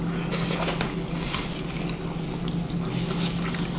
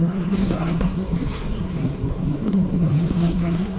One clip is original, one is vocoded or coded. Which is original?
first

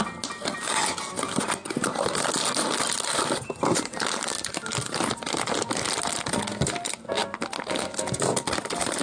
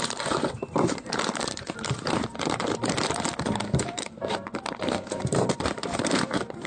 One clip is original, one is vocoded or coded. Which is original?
first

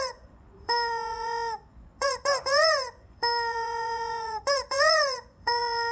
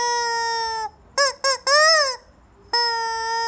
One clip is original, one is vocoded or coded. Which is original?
second